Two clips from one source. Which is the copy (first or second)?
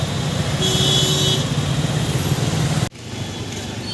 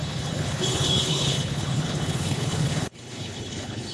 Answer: second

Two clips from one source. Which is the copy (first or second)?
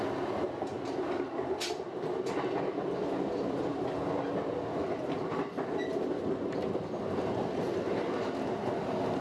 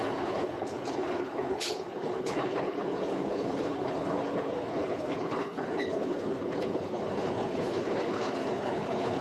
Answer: second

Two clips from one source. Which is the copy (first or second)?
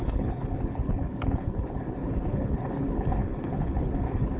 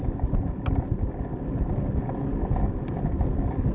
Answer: first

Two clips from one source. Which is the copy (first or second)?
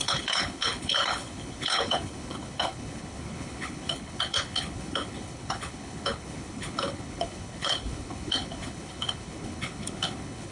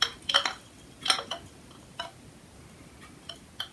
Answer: first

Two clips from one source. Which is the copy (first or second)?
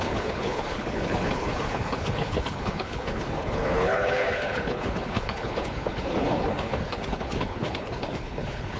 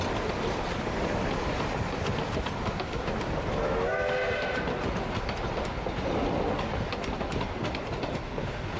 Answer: first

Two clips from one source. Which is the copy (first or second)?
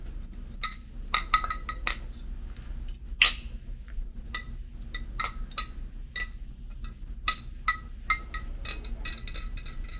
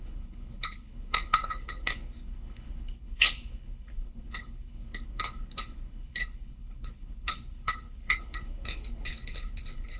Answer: second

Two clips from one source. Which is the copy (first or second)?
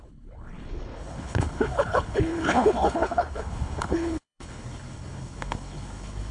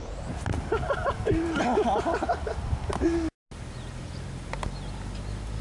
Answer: first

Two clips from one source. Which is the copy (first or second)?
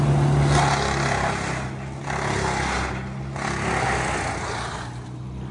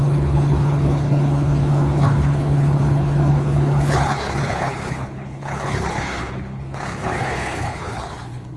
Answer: second